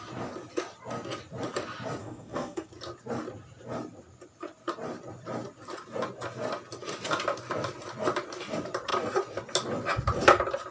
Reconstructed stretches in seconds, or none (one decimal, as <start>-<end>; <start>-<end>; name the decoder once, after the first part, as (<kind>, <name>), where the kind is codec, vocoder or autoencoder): 2.0-2.7 (codec, DAC)